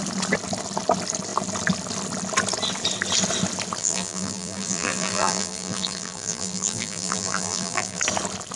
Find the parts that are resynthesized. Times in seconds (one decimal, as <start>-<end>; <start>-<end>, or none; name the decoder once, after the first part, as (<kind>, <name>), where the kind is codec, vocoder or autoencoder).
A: 3.8-8.0 (vocoder, BigVGAN v2)